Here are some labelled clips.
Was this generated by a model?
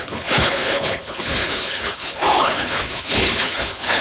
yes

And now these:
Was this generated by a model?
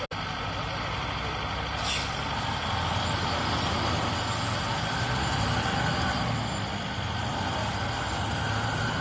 no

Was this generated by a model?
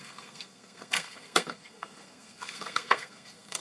yes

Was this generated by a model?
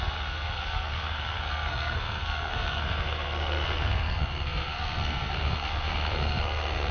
yes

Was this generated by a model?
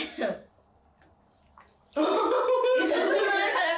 no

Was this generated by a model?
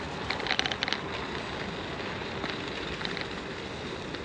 no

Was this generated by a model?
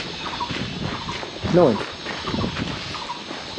no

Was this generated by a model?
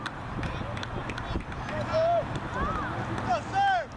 no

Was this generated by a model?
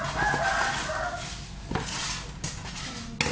no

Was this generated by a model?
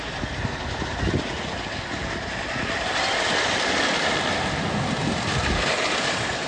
no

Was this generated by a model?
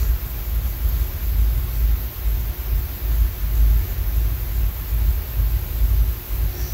no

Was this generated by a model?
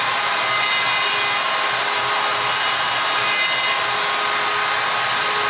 no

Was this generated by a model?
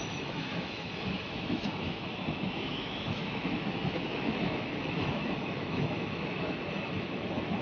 yes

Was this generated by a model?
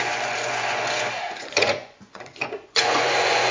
yes